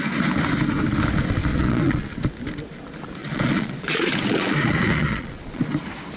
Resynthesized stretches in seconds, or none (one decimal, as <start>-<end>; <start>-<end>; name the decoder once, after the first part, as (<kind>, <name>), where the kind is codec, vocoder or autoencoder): 1.5-2.1 (vocoder, Vocos); 3.2-5.7